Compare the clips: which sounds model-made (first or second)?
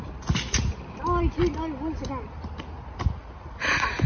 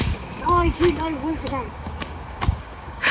second